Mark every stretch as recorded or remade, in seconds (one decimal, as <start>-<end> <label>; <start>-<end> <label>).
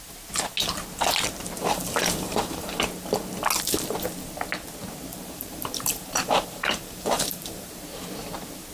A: 0.0-1.6 recorded; 1.6-2.8 remade; 2.8-5.1 recorded; 5.1-7.7 remade; 7.7-8.7 recorded